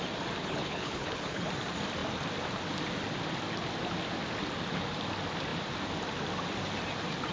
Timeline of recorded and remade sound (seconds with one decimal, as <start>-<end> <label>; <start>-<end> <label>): 0.0-0.4 recorded; 0.4-1.5 remade; 1.5-7.3 recorded